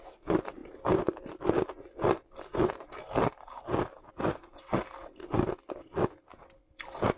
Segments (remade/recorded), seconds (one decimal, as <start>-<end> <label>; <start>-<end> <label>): 0.0-7.2 recorded